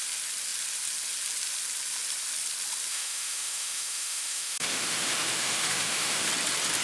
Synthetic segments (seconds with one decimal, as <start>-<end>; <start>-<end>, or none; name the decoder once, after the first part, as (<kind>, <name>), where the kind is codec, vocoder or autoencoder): 2.9-6.3 (autoencoder, DAC-VAE)